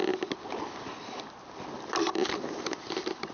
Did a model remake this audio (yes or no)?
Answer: no